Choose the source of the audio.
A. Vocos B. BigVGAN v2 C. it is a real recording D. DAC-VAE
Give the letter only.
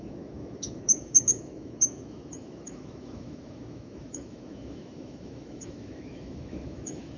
D